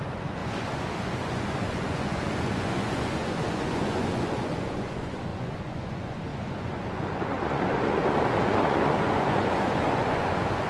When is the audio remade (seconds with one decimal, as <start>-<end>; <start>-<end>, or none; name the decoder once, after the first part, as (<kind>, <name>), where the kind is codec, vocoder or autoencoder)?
0.0-10.7 (vocoder, Vocos)